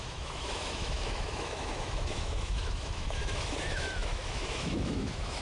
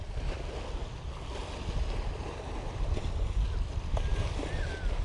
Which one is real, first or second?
second